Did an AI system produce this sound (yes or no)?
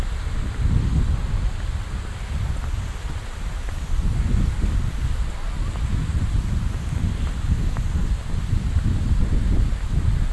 no